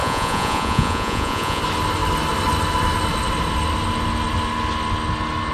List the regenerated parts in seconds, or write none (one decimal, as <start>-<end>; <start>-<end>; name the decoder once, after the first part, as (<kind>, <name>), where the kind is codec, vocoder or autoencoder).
0.0-1.6 (vocoder, Vocos)